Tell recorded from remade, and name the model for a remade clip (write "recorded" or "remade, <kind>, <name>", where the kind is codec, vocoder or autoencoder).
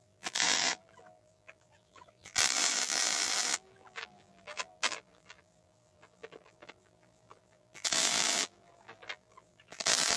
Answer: remade, vocoder, BigVGAN v2